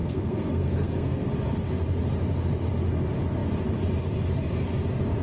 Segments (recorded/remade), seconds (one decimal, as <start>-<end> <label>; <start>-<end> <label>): 0.0-1.3 remade; 1.3-5.2 recorded